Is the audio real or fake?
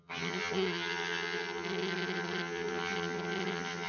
fake